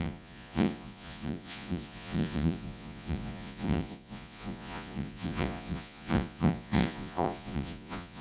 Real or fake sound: fake